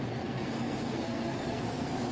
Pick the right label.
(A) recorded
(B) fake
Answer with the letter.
B